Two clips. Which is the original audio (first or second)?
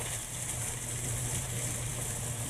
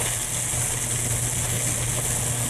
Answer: second